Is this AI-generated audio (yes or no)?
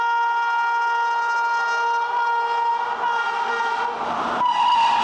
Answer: no